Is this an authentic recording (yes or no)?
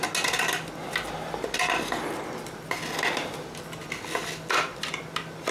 yes